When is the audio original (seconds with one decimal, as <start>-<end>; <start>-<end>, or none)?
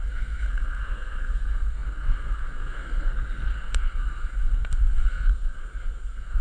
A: none